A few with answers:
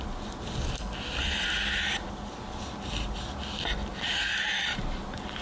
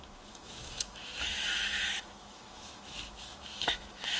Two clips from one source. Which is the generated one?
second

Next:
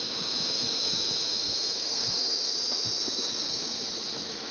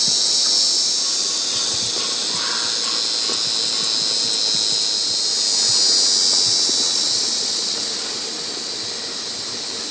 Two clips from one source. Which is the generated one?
first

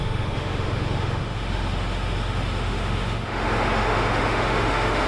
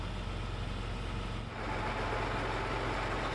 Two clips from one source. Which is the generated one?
first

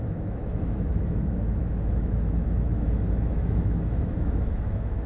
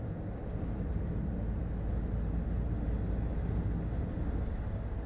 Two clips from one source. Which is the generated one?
first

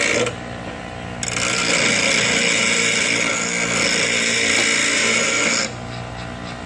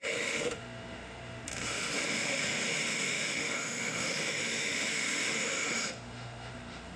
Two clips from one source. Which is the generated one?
second